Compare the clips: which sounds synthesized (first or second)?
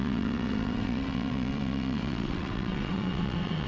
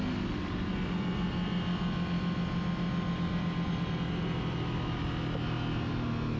first